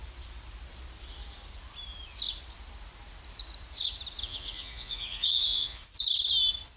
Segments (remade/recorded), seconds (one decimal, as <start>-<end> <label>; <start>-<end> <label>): 0.0-4.2 recorded; 4.2-5.8 remade; 5.8-6.8 recorded